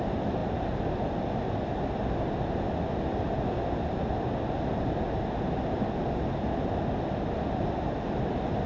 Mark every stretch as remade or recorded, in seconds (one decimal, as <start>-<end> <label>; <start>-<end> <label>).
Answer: 0.0-8.7 recorded